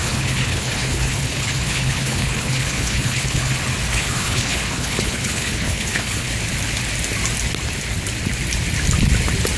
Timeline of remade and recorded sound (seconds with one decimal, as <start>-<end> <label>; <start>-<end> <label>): 0.0-3.5 remade; 3.5-3.9 recorded; 3.9-6.3 remade; 6.3-9.6 recorded